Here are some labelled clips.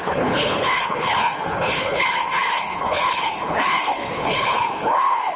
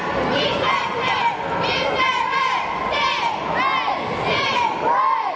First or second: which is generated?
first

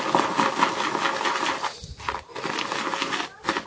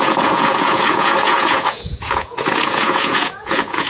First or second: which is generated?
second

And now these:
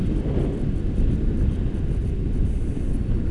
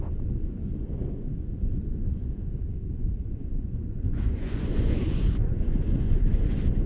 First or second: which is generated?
second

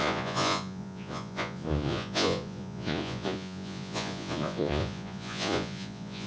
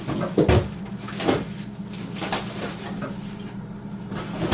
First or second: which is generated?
first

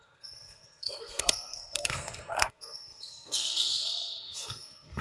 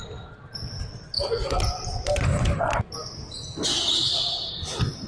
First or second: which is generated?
first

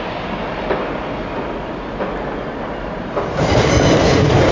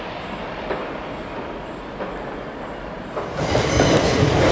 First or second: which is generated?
second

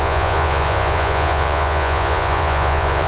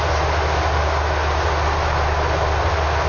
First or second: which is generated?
first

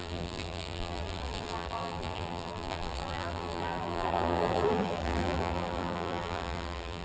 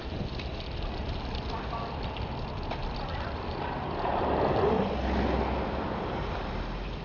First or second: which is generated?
first